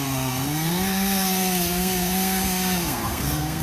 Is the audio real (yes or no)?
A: no